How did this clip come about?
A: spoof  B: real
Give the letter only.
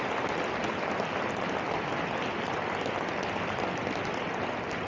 B